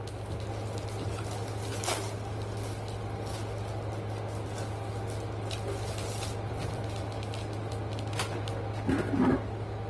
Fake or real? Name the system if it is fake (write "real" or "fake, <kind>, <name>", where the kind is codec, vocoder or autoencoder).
real